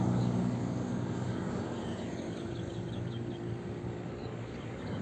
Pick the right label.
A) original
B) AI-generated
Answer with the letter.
B